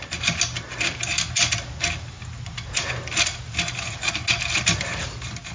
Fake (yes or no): no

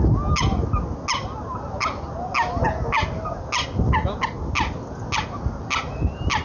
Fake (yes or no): no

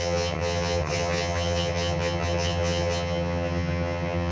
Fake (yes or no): yes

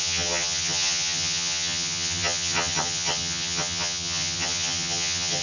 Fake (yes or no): yes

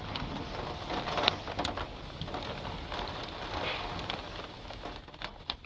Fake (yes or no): no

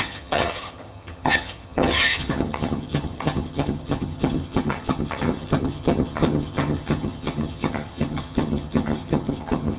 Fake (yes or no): yes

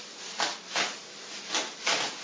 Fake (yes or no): no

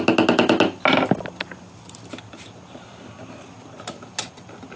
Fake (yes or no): no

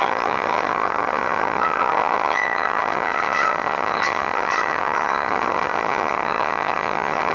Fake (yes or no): yes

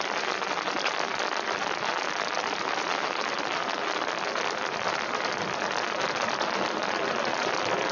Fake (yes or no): no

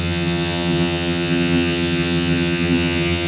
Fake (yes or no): yes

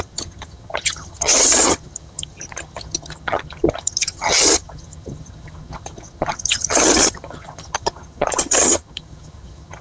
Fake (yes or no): yes